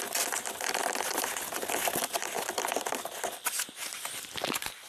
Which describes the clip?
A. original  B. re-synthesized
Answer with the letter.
B